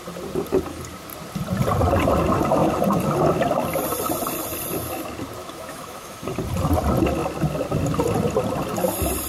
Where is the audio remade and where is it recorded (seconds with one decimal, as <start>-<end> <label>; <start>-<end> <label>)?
0.0-5.4 recorded; 5.4-6.2 remade; 6.2-9.3 recorded